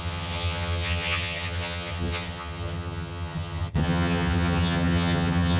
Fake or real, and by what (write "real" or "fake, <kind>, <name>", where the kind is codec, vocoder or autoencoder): fake, vocoder, HiFi-GAN